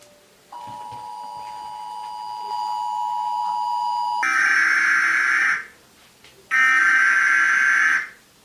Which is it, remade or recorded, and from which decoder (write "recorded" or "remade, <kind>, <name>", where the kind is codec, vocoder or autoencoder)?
recorded